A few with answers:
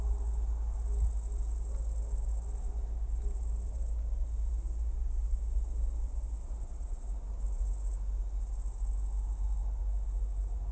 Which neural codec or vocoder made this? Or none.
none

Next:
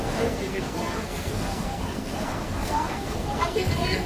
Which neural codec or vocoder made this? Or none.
codec, SNAC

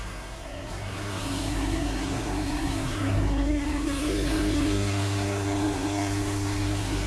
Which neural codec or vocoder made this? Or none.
codec, SNAC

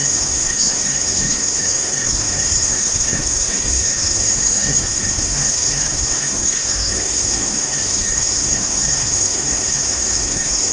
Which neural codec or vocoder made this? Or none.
codec, SNAC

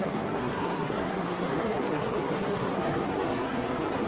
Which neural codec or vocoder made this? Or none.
codec, SNAC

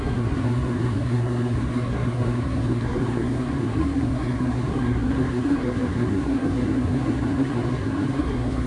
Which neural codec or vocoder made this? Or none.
codec, SNAC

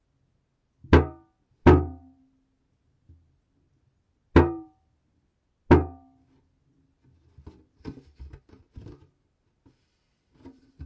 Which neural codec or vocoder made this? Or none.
none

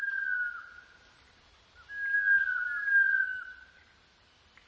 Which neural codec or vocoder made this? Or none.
none